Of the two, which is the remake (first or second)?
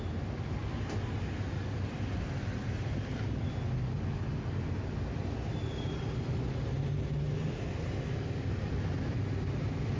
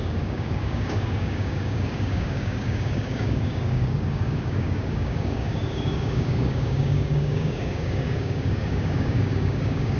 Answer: second